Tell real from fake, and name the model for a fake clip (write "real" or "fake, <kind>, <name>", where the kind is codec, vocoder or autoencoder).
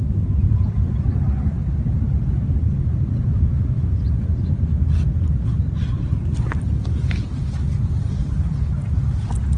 real